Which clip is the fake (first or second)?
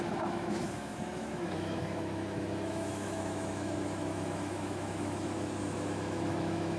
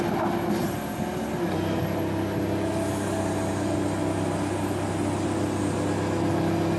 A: first